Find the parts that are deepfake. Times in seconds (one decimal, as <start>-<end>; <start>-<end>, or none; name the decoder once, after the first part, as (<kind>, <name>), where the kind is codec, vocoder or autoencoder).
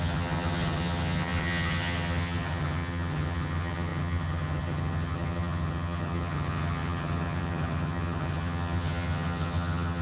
0.0-10.0 (vocoder, HiFi-GAN)